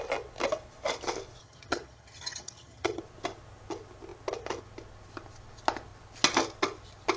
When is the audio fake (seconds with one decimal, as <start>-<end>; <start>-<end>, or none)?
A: 1.4-3.0